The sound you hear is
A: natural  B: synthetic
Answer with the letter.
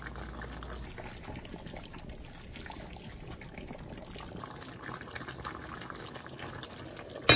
A